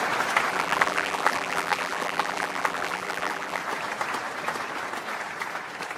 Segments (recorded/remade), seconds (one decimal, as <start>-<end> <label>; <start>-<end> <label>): 0.0-0.5 recorded; 0.5-3.6 remade; 3.6-6.0 recorded